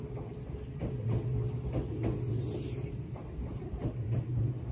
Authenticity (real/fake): real